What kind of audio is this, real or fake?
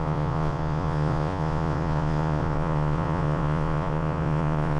fake